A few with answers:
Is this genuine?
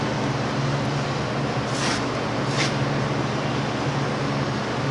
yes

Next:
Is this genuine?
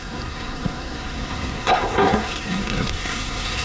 no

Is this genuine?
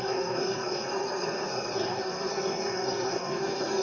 no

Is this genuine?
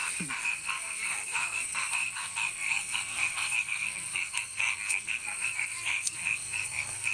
no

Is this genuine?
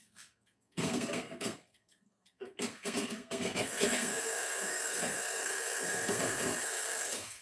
no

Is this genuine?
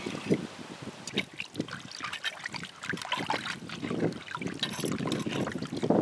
yes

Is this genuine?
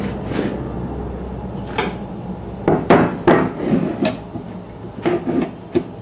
yes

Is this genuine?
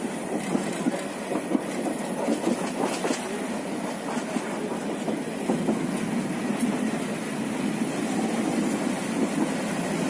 yes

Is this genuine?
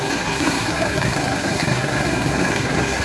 no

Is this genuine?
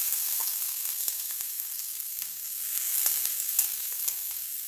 no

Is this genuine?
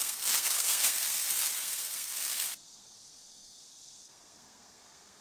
no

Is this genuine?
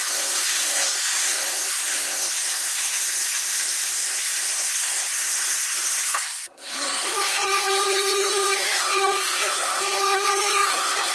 no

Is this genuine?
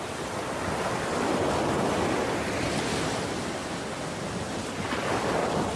yes